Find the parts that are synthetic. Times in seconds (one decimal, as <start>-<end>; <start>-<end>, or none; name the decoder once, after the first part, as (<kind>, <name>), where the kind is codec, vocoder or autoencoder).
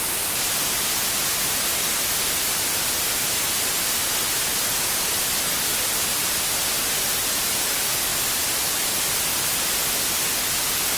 none